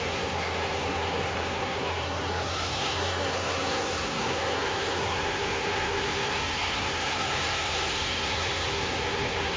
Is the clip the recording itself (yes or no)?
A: no